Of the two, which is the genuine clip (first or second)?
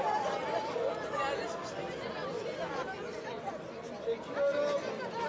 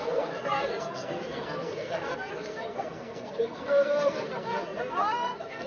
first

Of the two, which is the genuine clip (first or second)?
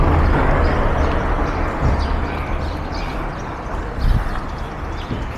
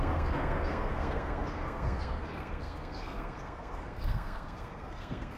first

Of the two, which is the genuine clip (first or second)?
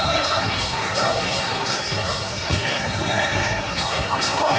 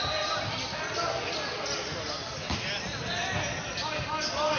second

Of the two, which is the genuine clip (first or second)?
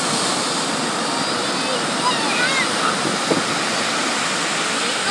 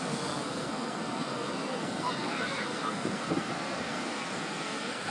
first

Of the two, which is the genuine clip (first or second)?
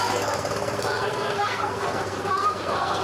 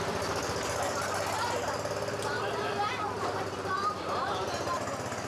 second